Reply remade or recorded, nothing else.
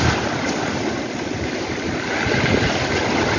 recorded